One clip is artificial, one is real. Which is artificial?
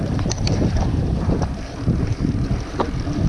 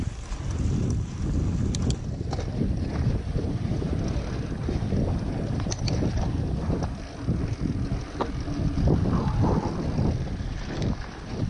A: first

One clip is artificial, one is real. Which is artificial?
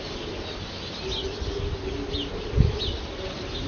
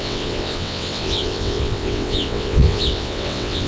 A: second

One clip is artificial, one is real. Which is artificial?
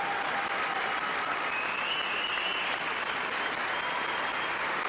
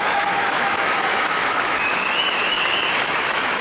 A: second